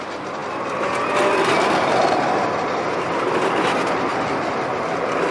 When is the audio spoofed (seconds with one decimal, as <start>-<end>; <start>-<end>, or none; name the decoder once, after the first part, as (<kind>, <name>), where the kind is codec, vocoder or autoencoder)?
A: none